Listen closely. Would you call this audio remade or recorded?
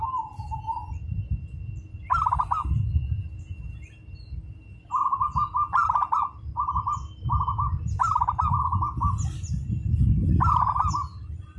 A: recorded